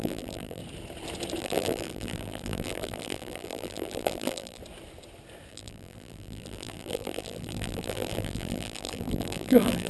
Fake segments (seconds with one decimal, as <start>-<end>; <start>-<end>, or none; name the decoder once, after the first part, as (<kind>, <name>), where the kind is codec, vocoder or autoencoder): 0.0-0.6 (vocoder, BigVGAN v2); 1.4-4.6; 5.5-9.9